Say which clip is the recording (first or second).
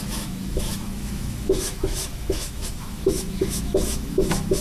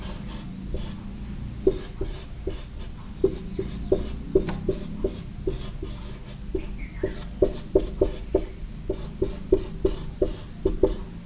second